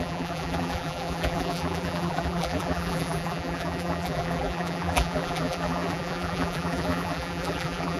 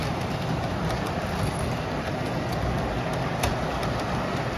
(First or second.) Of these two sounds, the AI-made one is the first